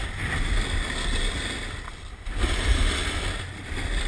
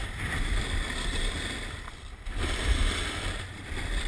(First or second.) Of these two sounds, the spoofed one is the second